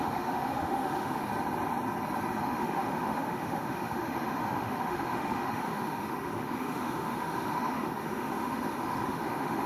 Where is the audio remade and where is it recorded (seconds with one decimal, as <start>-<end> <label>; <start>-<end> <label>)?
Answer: 0.0-1.3 remade; 1.3-2.4 recorded; 2.4-9.7 remade